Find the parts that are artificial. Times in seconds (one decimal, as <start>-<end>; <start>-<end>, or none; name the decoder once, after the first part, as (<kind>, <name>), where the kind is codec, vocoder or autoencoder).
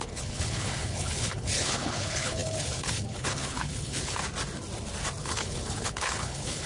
0.0-4.2 (codec, HILCodec); 5.2-6.7